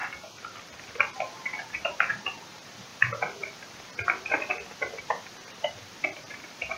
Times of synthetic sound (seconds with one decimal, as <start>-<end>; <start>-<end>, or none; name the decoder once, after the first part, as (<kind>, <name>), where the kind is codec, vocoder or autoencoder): 0.8-2.9 (vocoder, BigVGAN v2); 5.0-6.8